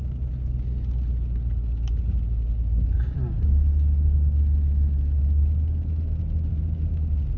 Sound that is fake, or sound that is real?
real